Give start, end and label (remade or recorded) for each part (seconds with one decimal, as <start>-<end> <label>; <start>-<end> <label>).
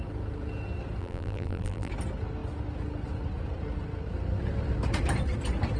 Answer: 0.0-1.0 recorded; 1.0-1.9 remade; 1.9-5.8 recorded